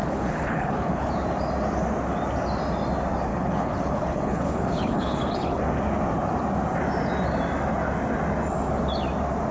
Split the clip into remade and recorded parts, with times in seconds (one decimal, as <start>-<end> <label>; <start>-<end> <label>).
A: 0.0-1.1 remade; 1.1-3.3 recorded; 3.3-5.6 remade; 5.6-9.5 recorded